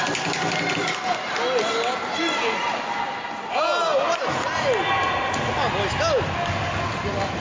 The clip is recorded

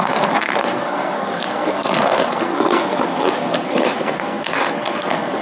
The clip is remade